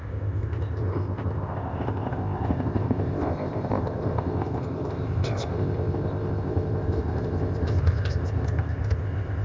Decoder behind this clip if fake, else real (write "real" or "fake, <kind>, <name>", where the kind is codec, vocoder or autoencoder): fake, codec, ZipCodec